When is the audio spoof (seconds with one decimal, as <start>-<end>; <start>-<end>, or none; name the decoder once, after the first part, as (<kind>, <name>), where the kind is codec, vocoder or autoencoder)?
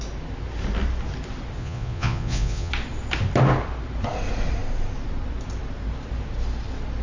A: 1.6-2.7 (vocoder, Vocos)